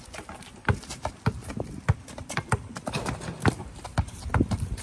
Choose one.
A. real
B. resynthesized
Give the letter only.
A